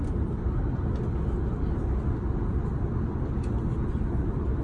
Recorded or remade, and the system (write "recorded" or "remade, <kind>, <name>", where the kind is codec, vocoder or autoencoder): recorded